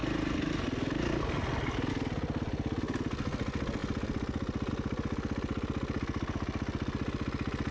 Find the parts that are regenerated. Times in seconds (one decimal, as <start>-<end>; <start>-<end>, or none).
none